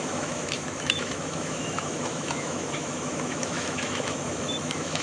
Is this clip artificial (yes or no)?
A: yes